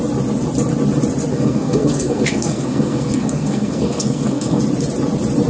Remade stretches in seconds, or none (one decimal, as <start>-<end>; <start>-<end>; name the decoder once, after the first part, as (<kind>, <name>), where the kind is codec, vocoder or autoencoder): 1.3-4.6 (codec, SNAC)